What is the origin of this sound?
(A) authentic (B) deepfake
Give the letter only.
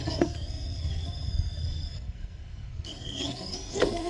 B